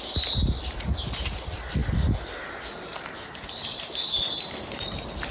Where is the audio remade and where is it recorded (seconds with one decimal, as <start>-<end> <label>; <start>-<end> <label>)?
0.0-5.3 recorded